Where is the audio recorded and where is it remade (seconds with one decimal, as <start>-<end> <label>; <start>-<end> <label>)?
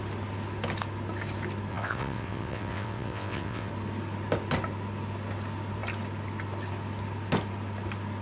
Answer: 0.0-1.7 recorded; 1.7-3.7 remade; 3.7-8.2 recorded